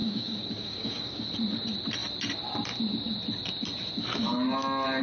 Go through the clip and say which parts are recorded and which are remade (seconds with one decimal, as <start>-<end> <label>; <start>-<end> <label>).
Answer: 0.0-1.2 remade; 1.2-5.0 recorded